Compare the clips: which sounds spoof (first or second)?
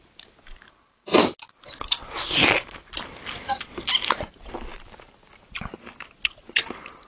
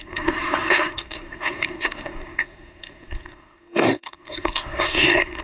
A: second